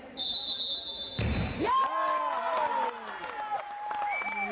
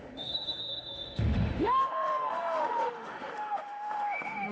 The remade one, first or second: second